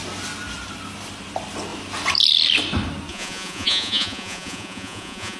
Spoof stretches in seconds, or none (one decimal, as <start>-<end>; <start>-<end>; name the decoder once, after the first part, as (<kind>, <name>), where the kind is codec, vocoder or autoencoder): 3.1-5.4 (vocoder, Vocos)